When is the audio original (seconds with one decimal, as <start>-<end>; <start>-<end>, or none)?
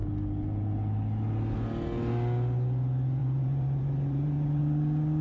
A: 0.0-3.2; 4.6-5.2